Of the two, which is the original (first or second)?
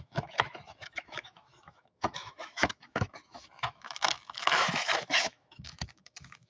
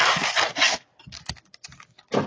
second